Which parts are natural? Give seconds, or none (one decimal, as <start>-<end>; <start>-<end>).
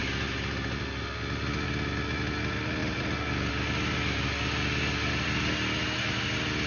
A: 0.0-6.7